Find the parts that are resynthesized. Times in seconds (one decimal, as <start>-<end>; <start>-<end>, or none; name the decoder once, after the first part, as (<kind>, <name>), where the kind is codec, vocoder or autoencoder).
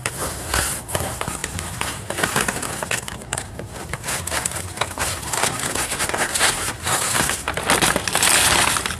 0.0-7.5 (codec, SNAC)